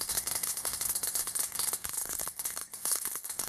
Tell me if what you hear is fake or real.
fake